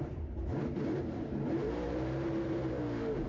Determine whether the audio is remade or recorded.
remade